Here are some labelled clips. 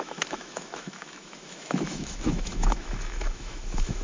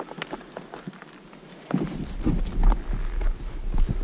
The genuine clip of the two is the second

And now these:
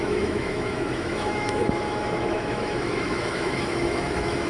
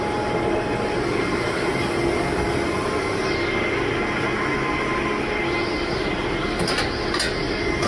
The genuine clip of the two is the second